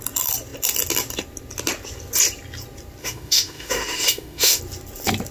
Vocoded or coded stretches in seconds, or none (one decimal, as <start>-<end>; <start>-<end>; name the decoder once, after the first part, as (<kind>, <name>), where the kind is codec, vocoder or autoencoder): 3.0-4.6 (autoencoder, DAC-VAE)